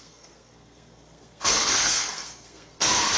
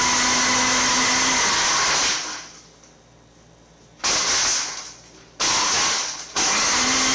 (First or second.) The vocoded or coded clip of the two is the first